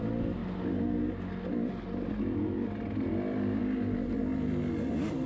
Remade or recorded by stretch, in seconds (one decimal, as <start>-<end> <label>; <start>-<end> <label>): 0.0-5.3 recorded